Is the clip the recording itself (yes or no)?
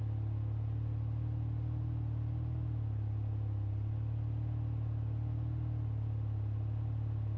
yes